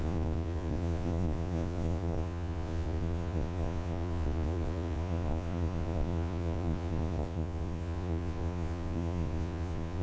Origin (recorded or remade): remade